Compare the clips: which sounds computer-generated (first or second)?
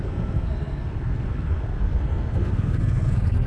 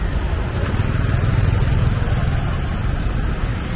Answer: first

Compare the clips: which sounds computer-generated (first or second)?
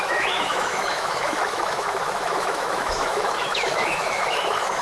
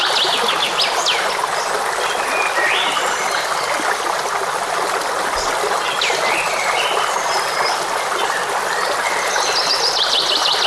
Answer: first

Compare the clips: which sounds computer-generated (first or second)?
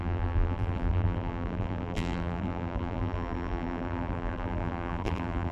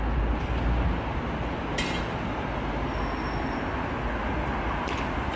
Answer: first